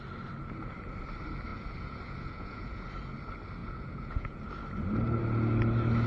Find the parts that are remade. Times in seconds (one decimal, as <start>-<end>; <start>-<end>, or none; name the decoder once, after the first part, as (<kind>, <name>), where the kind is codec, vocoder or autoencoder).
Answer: 1.5-2.9 (vocoder, Vocos); 3.6-4.4